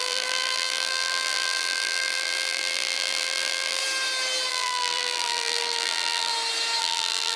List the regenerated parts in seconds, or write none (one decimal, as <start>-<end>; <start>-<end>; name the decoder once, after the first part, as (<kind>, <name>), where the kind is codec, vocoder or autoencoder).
0.0-3.8 (vocoder, BigVGAN v2); 4.5-6.3; 6.8-7.4